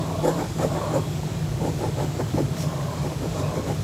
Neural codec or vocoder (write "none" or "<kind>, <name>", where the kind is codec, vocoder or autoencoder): codec, DAC